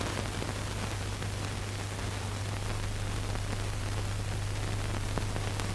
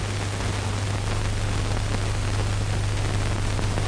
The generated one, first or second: first